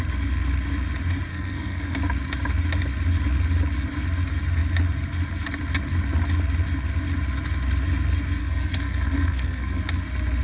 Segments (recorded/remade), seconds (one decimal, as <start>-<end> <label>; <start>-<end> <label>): 0.0-1.3 recorded; 1.3-2.0 remade; 2.0-8.4 recorded; 8.4-9.8 remade; 9.8-10.4 recorded